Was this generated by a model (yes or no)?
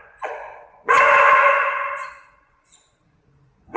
yes